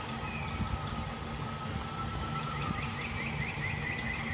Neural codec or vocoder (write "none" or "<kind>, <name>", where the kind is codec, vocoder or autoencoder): none